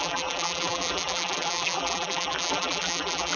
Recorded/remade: remade